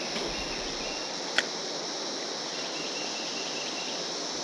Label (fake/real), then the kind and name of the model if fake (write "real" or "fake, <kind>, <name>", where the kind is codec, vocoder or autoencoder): real